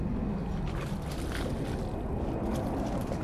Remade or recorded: recorded